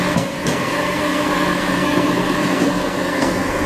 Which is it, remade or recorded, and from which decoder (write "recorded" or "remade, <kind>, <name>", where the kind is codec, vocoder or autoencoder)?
remade, codec, SNAC